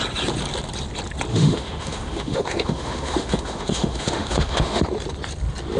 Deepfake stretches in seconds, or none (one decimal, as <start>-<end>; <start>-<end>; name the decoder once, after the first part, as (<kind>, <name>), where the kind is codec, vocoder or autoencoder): 1.3-4.8 (autoencoder, DAC-VAE)